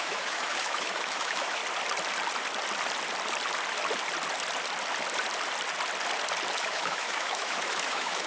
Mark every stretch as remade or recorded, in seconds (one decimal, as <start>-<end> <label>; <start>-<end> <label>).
0.0-1.6 remade; 1.6-6.6 recorded; 6.6-8.3 remade